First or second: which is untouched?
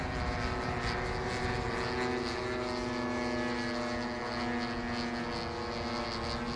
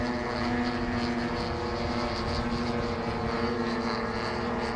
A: first